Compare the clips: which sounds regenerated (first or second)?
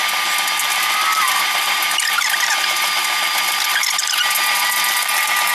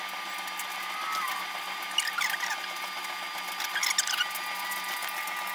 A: first